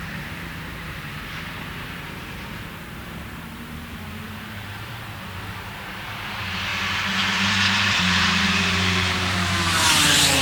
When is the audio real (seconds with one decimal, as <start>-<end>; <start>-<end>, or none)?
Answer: 6.7-7.3

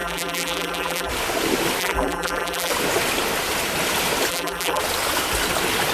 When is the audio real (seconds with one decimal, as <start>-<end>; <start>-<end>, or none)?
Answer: 1.1-1.8; 2.7-4.3; 4.8-5.9

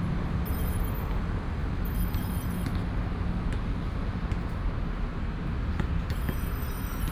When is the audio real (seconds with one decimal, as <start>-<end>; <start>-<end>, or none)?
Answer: 0.0-5.7; 6.2-7.1

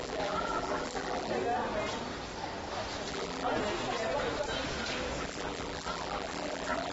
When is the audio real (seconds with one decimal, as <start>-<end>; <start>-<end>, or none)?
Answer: 1.3-3.1; 3.5-5.2

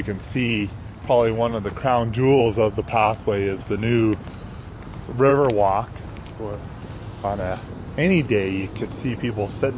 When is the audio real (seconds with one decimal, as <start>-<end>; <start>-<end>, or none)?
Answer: 1.5-2.4; 5.3-6.0; 6.8-7.4

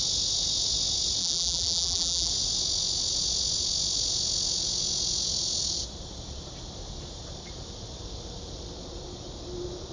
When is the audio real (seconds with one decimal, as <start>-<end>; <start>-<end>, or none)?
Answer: 0.0-1.2; 2.3-9.9

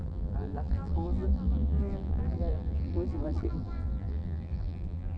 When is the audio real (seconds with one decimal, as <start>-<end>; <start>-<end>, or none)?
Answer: none